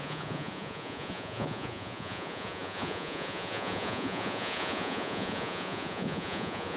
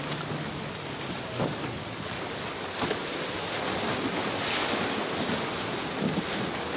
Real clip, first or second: second